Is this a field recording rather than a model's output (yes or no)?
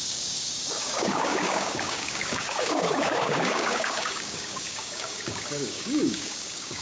no